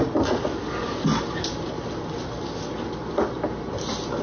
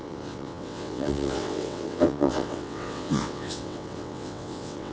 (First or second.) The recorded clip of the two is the first